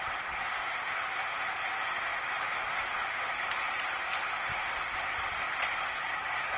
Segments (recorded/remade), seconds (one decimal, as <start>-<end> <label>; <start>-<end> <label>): 0.0-5.9 recorded; 5.9-6.6 remade